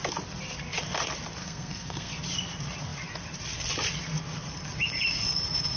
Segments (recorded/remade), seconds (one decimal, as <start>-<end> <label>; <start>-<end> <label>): 0.0-1.4 recorded; 1.4-2.1 remade; 2.1-5.8 recorded

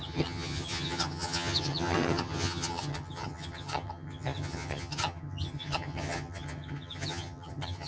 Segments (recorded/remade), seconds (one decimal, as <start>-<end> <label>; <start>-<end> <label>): 0.0-7.9 remade

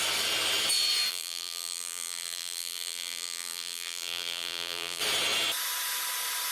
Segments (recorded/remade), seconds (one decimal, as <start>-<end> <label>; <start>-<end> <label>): 0.0-1.1 recorded; 1.1-5.0 remade; 5.0-6.5 recorded

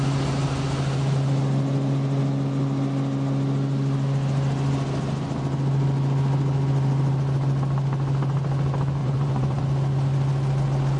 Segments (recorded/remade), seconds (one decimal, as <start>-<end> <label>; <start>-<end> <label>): 0.0-9.0 recorded; 9.0-9.6 remade; 9.6-11.0 recorded

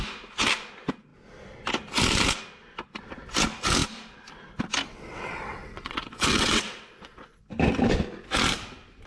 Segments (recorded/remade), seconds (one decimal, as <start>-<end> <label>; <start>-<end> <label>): 0.0-4.9 recorded; 4.9-7.4 remade; 7.4-9.1 recorded